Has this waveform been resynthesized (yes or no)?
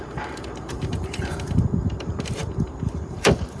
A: yes